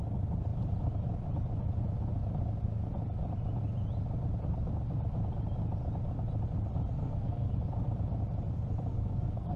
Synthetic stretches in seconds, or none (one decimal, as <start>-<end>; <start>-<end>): 7.0-7.5; 8.9-9.6